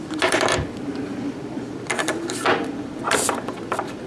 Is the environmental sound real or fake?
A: fake